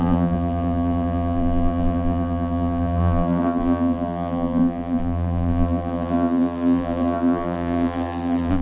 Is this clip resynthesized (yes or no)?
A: yes